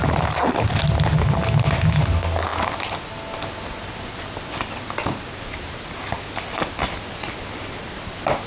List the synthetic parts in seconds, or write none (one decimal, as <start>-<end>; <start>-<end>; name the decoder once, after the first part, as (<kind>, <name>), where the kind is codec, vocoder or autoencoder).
none